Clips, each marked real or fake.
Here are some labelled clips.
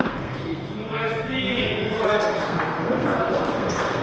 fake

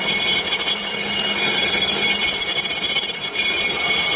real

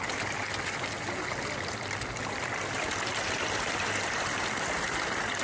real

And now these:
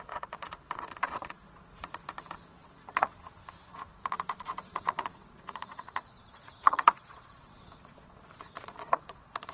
fake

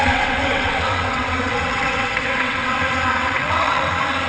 fake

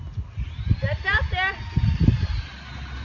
real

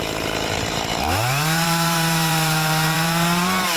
fake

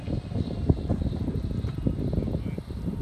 real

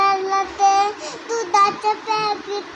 real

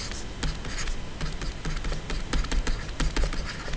real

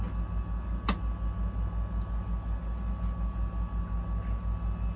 real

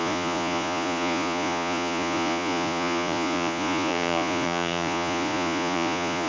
fake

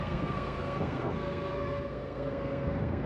fake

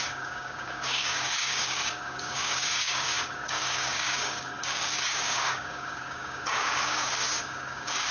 fake